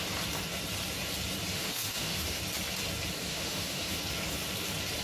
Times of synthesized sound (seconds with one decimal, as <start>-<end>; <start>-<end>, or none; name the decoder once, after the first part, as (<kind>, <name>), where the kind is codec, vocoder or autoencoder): 1.5-2.4 (autoencoder, DAC-VAE); 3.2-4.0